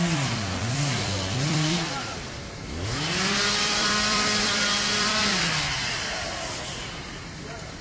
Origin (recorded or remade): remade